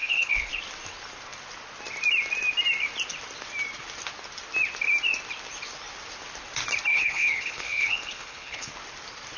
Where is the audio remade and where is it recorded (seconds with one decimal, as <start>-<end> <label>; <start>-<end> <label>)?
0.0-0.5 remade; 0.5-6.9 recorded; 6.9-8.7 remade; 8.7-9.4 recorded